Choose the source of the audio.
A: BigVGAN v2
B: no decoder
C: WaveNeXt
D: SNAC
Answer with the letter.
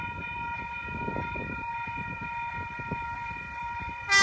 A